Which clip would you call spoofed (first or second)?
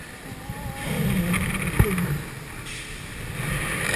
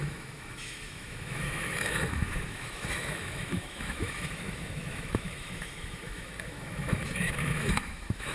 second